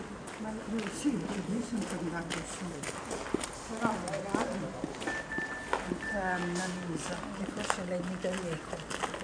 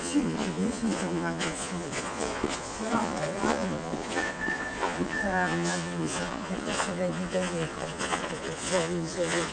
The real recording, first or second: first